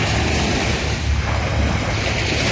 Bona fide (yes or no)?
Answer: yes